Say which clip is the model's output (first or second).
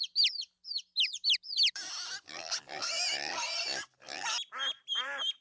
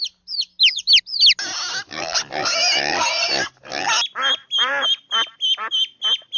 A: first